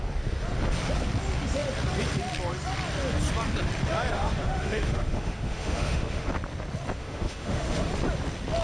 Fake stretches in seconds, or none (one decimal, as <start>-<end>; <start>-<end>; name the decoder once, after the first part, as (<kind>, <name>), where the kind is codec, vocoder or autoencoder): 4.1-6.3 (autoencoder, DAC-VAE); 7.0-7.9